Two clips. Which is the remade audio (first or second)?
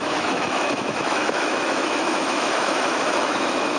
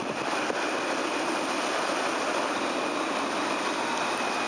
first